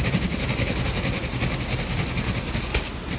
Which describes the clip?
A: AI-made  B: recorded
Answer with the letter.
B